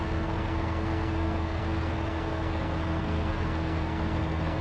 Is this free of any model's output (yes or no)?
no